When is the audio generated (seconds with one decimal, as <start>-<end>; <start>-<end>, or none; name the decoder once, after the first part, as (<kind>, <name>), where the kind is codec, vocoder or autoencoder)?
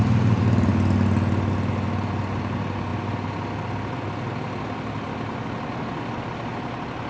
none